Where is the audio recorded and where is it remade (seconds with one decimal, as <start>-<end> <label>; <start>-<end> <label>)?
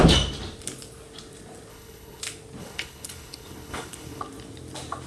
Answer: 0.0-1.7 recorded; 1.7-2.2 remade; 2.2-2.6 recorded; 2.6-4.2 remade; 4.2-5.1 recorded